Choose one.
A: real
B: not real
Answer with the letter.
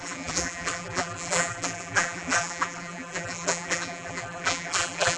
B